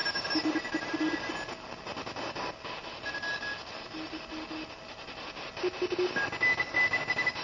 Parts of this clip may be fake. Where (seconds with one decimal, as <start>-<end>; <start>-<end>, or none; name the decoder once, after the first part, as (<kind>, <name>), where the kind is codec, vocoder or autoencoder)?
0.0-1.3 (vocoder, BigVGAN v2); 3.3-5.4

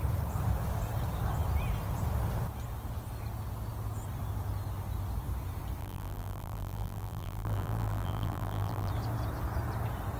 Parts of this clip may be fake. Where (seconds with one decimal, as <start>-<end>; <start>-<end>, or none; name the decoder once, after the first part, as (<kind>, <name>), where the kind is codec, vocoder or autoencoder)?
5.8-8.9 (vocoder, BigVGAN v2)